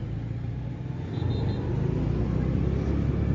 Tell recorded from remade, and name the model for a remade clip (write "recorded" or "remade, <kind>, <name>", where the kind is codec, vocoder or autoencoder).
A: recorded